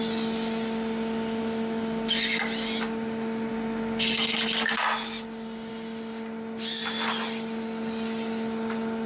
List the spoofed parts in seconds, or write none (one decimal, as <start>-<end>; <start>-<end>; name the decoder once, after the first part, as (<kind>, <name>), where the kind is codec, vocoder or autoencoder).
none

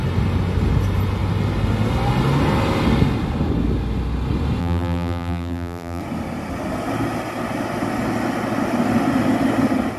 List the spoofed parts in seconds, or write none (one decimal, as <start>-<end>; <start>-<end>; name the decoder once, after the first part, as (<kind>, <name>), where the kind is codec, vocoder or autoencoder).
4.6-6.0 (vocoder, BigVGAN v2)

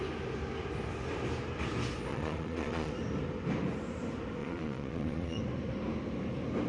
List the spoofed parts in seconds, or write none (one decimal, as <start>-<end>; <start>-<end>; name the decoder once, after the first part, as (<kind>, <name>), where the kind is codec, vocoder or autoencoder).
2.1-2.9 (vocoder, Vocos); 4.4-5.4

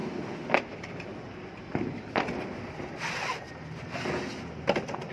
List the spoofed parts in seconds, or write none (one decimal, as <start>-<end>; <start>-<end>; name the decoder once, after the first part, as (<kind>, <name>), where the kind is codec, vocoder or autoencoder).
none

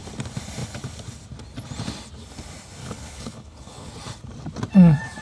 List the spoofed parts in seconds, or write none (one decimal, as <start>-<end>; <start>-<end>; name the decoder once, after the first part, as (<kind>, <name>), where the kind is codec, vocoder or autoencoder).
2.8-3.9 (codec, HILCodec)

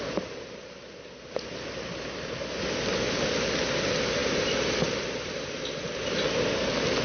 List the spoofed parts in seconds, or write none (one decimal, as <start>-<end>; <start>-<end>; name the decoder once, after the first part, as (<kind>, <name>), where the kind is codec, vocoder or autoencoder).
none